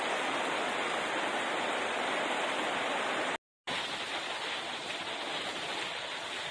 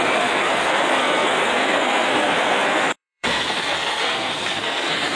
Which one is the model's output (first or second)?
second